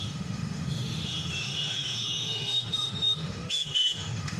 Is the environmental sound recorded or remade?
remade